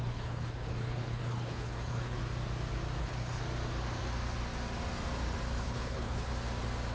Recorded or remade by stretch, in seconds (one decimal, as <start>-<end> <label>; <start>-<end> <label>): 0.0-2.2 remade; 2.2-3.0 recorded; 3.0-3.4 remade; 3.4-5.6 recorded; 5.6-6.3 remade; 6.3-6.9 recorded